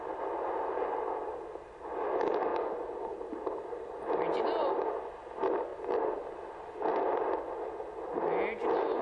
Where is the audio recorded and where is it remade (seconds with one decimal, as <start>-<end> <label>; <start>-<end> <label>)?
0.0-2.5 recorded; 2.5-3.0 remade; 3.0-5.7 recorded; 5.7-7.4 remade; 7.4-9.0 recorded